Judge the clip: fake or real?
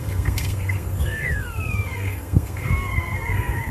fake